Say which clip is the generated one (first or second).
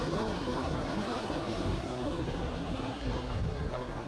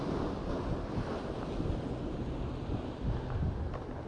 first